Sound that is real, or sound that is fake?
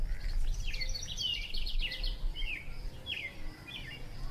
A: real